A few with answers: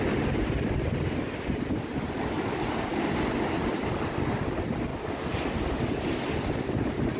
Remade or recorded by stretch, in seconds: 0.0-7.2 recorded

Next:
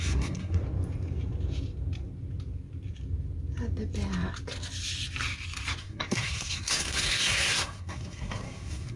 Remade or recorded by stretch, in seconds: 0.0-0.6 remade; 0.6-5.8 recorded; 5.8-9.0 remade

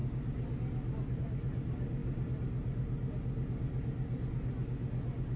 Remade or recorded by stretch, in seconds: 0.0-5.4 recorded